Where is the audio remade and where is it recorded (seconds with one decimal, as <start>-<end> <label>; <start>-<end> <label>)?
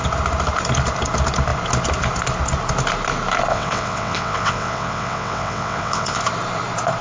0.0-3.5 recorded; 3.5-6.2 remade; 6.2-7.0 recorded